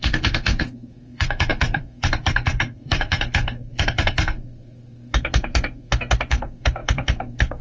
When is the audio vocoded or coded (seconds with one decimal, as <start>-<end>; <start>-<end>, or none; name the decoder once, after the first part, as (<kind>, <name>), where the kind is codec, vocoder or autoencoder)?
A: 0.0-7.6 (codec, SNAC)